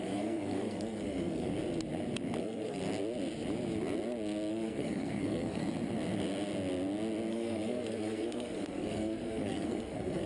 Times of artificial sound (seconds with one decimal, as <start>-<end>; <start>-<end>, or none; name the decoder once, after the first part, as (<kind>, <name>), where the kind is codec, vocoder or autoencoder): 0.0-1.5 (codec, SNAC); 2.4-2.8; 4.5-5.6; 7.3-10.3